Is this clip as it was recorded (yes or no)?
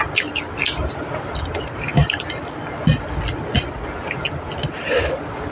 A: yes